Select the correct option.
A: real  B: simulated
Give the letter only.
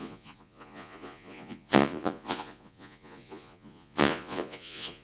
B